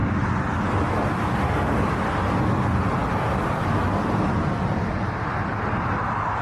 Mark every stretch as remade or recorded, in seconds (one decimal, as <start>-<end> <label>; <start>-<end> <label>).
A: 0.0-6.4 recorded